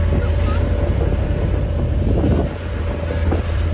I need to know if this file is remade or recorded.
recorded